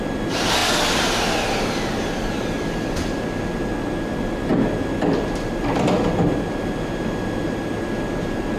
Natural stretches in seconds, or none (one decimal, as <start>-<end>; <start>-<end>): 0.0-8.6